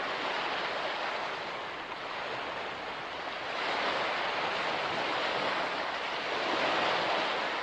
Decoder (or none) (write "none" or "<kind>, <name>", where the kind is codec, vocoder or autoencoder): none